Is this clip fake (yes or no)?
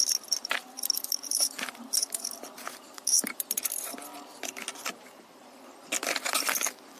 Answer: no